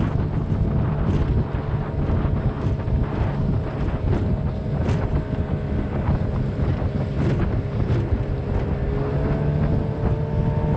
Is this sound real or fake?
real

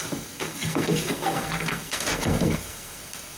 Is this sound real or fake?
fake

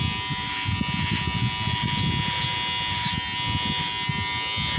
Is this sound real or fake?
real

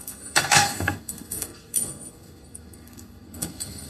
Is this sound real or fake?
fake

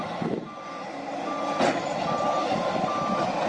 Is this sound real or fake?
real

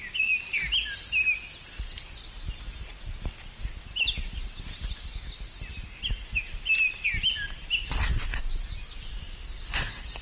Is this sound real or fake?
real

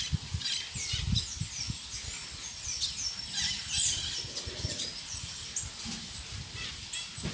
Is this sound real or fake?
real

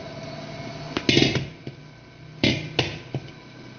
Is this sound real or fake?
real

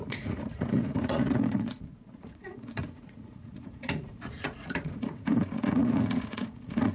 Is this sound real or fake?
fake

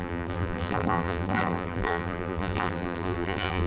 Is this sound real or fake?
fake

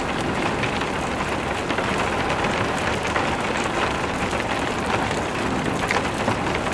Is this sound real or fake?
real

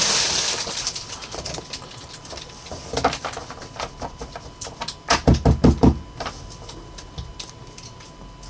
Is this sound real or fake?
real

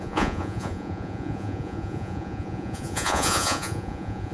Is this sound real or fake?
fake